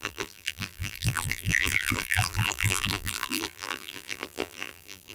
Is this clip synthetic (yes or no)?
yes